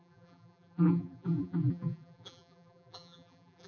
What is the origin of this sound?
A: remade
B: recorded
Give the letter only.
A